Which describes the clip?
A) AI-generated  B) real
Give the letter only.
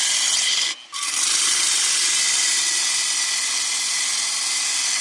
B